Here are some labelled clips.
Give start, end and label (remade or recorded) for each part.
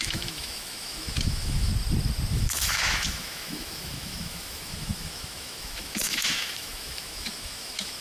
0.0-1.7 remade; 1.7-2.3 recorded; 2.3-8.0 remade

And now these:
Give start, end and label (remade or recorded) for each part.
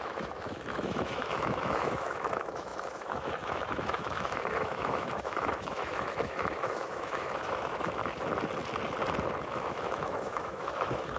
0.0-8.0 remade; 8.0-9.4 recorded; 9.4-11.2 remade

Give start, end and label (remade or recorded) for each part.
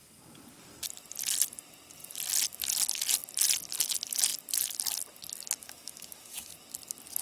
0.0-5.6 recorded; 5.6-6.5 remade; 6.5-7.2 recorded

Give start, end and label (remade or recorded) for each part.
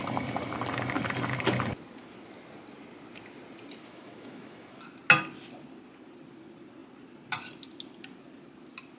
0.0-3.8 recorded; 3.8-4.8 remade; 4.8-9.0 recorded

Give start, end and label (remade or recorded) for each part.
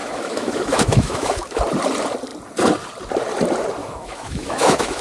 0.0-1.6 remade; 1.6-3.8 recorded; 3.8-5.0 remade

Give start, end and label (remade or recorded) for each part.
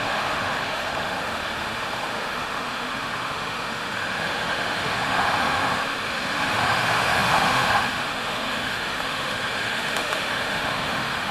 0.0-11.3 remade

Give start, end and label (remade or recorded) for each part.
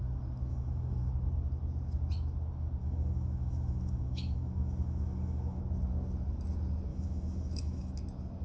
0.0-0.5 recorded; 0.5-1.1 remade; 1.1-2.8 recorded; 2.8-5.6 remade; 5.6-6.9 recorded; 6.9-7.9 remade; 7.9-8.4 recorded